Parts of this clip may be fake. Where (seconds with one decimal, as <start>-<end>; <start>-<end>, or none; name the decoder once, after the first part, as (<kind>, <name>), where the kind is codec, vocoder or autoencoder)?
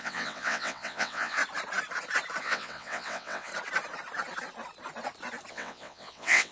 0.0-1.4 (vocoder, WaveNeXt); 2.4-3.5; 5.5-6.5